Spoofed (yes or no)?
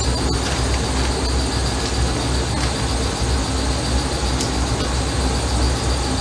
no